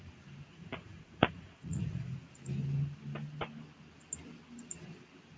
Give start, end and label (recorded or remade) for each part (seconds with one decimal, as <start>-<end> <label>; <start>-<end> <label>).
0.0-0.5 recorded; 0.5-2.2 remade; 2.2-5.4 recorded